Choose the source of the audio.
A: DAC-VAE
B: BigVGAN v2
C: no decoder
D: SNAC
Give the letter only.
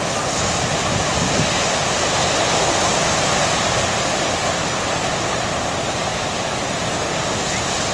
C